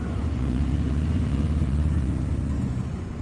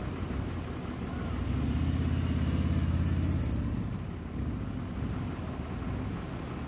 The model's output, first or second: first